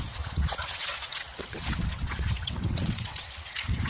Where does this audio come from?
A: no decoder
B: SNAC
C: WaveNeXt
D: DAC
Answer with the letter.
C